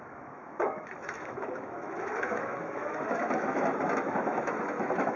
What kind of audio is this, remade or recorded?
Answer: remade